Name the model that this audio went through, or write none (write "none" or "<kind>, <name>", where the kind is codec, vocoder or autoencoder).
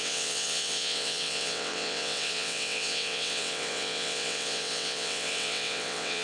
vocoder, WaveNeXt